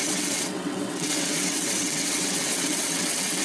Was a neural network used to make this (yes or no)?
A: yes